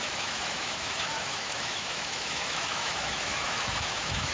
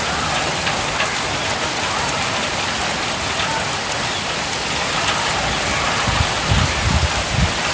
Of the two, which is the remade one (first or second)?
first